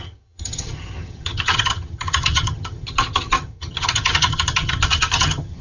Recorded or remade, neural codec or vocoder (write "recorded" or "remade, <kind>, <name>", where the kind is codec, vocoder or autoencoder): remade, vocoder, HiFi-GAN